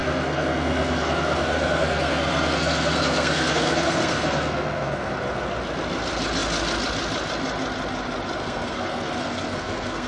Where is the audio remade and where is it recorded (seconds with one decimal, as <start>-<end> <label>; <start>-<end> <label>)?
0.0-5.1 remade; 5.1-8.4 recorded; 8.4-10.1 remade